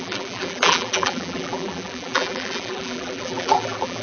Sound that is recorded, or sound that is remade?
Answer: remade